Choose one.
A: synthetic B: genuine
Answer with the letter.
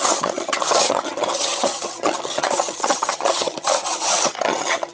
A